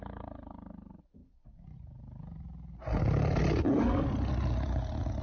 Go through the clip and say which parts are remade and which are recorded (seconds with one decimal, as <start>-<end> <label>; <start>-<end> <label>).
0.0-5.2 recorded